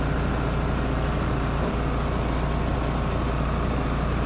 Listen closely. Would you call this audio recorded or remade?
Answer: recorded